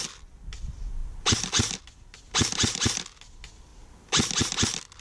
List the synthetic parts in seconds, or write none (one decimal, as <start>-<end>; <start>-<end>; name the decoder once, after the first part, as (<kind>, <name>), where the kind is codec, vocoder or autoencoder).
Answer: none